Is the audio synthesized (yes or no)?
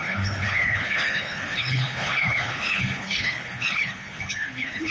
yes